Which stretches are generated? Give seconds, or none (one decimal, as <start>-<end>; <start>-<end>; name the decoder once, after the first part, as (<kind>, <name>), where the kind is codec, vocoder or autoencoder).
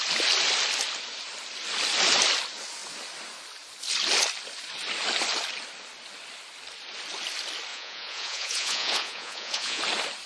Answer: 7.7-9.8 (vocoder, Vocos)